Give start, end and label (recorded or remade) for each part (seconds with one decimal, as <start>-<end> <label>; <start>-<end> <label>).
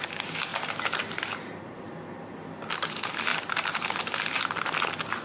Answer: 0.0-5.2 recorded